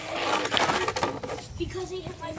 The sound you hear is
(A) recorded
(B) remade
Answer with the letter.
A